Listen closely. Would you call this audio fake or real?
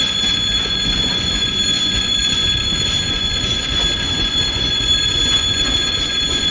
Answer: fake